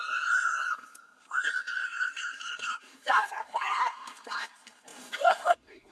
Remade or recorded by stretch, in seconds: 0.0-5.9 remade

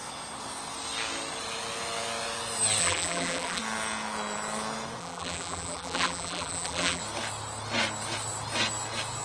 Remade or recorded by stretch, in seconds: 0.0-2.8 recorded; 2.8-3.6 remade; 3.6-5.0 recorded; 5.0-7.0 remade; 7.0-9.2 recorded

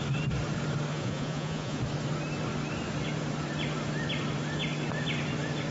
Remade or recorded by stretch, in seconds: 0.0-0.9 recorded; 0.9-1.8 remade; 1.8-5.7 recorded

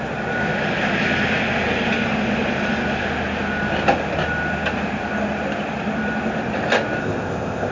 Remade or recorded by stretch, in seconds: 0.0-7.0 recorded; 7.0-7.7 remade

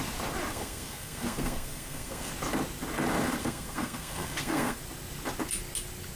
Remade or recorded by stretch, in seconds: 0.0-0.5 recorded; 0.5-2.3 remade; 2.3-3.4 recorded; 3.4-4.8 remade; 4.8-6.2 recorded

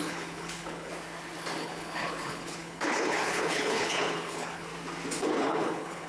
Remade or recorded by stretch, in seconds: 0.0-0.9 remade; 0.9-1.6 recorded; 1.6-4.7 remade; 4.7-5.2 recorded; 5.2-6.1 remade